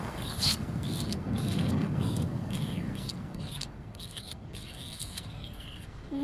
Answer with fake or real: fake